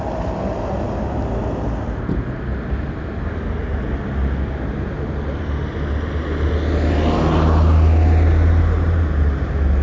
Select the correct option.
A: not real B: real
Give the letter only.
B